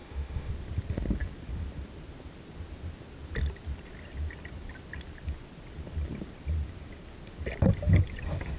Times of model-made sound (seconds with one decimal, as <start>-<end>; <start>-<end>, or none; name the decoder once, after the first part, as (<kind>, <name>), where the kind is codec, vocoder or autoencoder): 0.0-0.5 (autoencoder, DAC-VAE)